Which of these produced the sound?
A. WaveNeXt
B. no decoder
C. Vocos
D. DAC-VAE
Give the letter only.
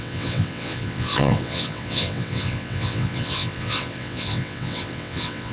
A